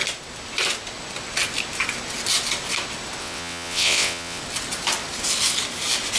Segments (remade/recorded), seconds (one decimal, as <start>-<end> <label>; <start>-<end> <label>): 0.0-3.2 recorded; 3.2-4.4 remade; 4.4-6.2 recorded